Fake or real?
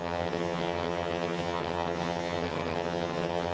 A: fake